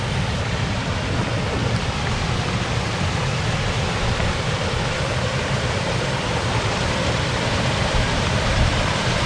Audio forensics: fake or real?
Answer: fake